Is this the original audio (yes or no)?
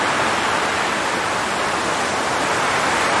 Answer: yes